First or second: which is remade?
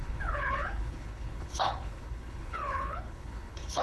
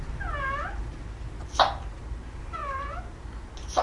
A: first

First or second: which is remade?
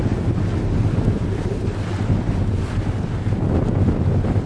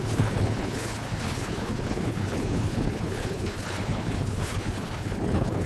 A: second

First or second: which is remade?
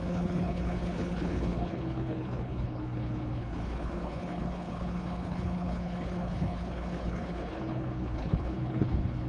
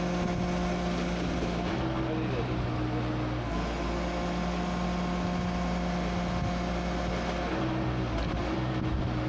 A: first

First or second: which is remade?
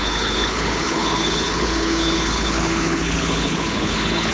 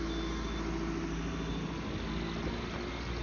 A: first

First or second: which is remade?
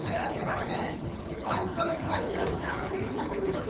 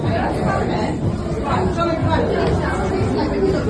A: first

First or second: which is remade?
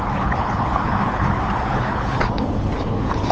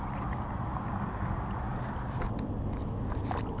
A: first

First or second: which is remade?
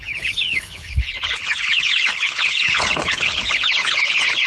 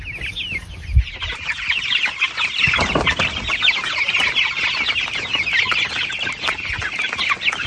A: first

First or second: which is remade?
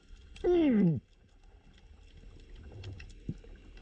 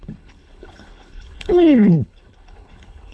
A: second